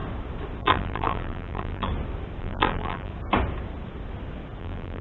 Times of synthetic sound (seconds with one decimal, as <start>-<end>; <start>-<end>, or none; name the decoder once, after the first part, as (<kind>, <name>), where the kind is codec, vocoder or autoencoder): 0.6-1.9 (vocoder, BigVGAN v2); 2.4-3.1; 4.6-5.0